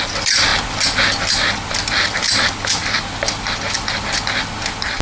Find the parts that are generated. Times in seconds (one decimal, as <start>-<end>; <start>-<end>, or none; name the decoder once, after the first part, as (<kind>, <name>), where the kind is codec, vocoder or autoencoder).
none